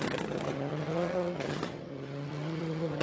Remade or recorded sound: remade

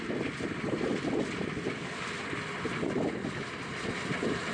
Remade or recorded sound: recorded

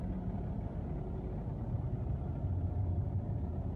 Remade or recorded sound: recorded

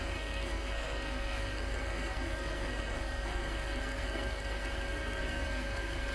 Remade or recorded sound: remade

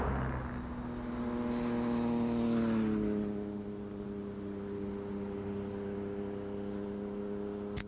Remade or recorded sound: recorded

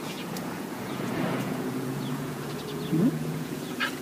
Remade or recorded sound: remade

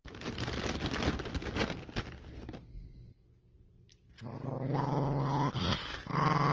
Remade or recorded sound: recorded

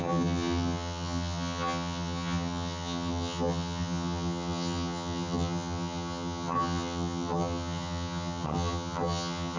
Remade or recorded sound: remade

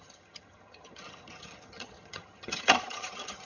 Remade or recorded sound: remade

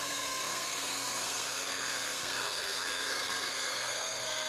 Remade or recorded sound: remade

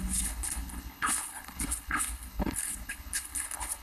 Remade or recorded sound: remade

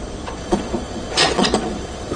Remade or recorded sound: remade